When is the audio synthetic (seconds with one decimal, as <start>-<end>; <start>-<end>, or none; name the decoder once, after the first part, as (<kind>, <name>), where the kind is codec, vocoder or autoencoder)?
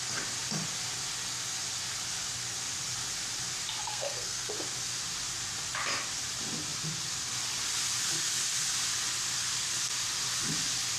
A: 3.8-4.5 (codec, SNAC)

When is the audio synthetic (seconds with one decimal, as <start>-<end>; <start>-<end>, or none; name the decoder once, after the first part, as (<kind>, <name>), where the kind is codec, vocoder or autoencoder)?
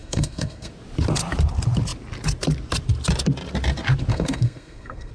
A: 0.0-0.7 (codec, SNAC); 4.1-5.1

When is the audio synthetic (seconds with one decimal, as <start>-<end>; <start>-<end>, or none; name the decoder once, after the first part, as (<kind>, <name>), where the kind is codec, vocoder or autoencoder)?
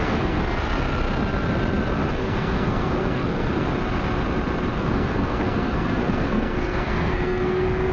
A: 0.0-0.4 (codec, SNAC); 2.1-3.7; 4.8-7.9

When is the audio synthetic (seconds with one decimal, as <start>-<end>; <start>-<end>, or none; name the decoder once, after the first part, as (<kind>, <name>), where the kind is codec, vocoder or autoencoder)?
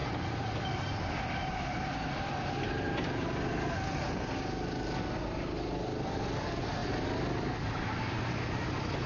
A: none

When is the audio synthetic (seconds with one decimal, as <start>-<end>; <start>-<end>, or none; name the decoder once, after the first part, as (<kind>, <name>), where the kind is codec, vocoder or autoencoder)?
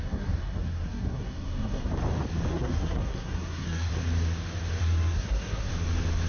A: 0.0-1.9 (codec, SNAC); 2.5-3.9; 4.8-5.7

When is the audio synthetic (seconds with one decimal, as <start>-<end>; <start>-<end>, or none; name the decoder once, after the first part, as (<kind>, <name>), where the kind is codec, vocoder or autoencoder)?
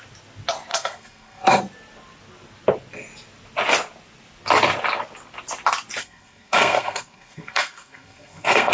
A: 0.7-1.6 (codec, SNAC); 6.0-8.7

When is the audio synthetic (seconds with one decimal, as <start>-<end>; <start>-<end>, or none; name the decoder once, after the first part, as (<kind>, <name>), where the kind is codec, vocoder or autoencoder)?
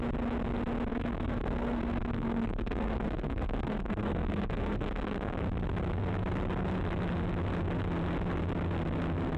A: 0.9-5.4 (codec, SNAC)